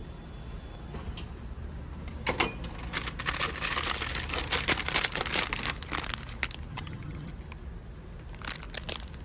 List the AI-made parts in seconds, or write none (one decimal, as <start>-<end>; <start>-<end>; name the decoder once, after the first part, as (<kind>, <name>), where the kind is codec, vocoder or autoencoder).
6.7-7.3 (vocoder, HiFi-GAN)